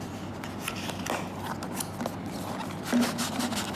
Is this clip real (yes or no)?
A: yes